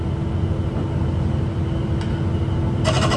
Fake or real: real